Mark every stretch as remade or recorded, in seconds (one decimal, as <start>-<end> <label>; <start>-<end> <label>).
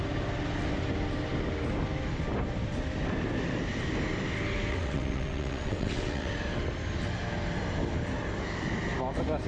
0.0-4.7 recorded; 4.7-6.3 remade; 6.3-9.5 recorded